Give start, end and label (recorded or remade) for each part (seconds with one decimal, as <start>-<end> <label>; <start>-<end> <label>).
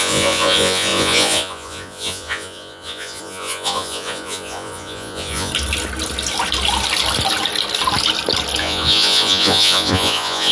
0.0-5.5 remade; 5.5-8.6 recorded; 8.6-10.5 remade